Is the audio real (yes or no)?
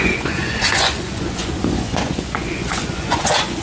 no